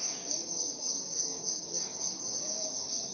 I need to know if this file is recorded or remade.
remade